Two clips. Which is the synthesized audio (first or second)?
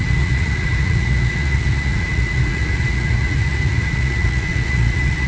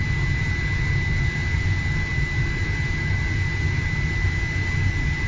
first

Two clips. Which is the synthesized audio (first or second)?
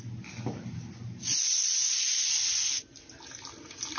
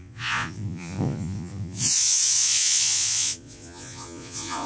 second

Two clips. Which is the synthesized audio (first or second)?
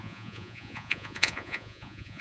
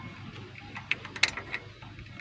first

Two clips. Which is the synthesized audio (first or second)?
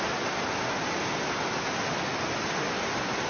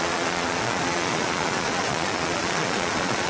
second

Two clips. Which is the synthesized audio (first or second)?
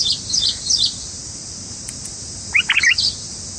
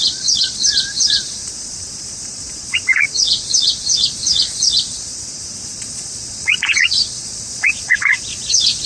second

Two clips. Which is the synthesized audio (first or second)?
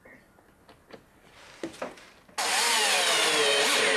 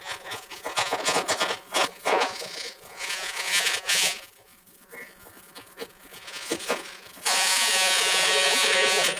second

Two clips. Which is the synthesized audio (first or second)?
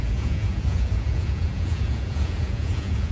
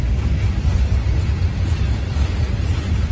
first